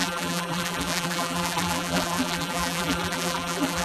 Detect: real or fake fake